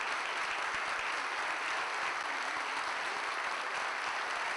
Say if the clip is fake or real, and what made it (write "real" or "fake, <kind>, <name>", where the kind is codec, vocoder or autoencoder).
real